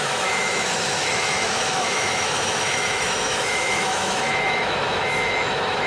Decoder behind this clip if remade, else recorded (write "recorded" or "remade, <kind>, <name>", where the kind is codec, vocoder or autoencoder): remade, autoencoder, DAC-VAE